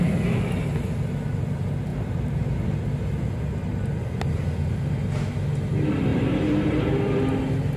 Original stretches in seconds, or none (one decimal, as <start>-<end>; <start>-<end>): 0.0-1.9; 2.8-6.1; 6.9-7.8